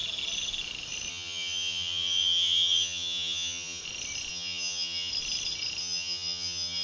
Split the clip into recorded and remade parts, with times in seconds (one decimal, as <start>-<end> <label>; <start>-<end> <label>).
0.0-1.1 recorded; 1.1-3.8 remade; 3.8-4.3 recorded; 4.3-5.1 remade; 5.1-5.8 recorded; 5.8-6.8 remade

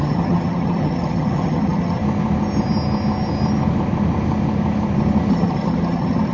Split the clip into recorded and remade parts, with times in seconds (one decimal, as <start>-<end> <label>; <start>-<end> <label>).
0.0-2.0 remade; 2.0-5.3 recorded; 5.3-6.3 remade